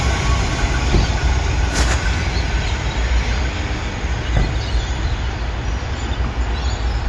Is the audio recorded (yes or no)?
yes